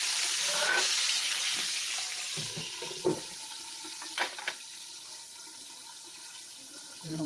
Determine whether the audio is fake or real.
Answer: fake